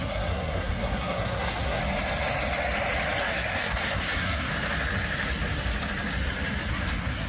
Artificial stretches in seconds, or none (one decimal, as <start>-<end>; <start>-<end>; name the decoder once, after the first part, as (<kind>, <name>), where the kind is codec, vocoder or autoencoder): 0.0-1.8 (codec, SNAC); 3.2-4.5; 6.7-7.3